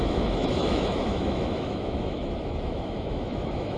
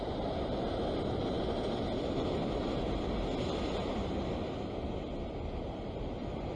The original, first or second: second